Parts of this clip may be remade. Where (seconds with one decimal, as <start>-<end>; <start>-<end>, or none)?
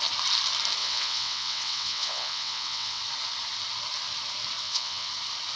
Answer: 0.8-3.0; 4.6-5.1